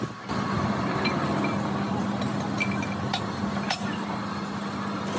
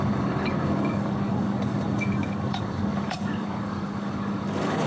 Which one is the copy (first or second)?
second